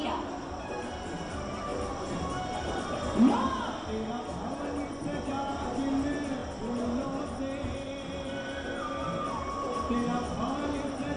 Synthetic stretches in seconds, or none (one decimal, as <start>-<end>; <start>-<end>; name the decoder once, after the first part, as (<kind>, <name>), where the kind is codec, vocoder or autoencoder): none